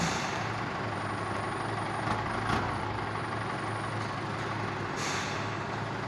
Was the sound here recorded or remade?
recorded